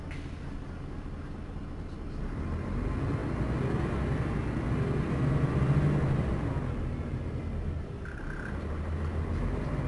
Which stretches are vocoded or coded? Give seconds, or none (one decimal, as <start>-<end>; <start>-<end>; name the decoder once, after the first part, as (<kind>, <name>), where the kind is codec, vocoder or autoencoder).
none